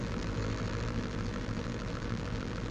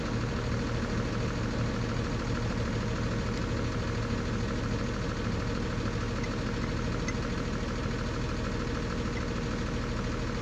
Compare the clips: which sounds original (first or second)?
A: second